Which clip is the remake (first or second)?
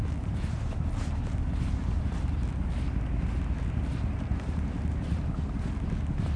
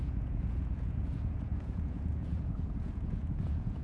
second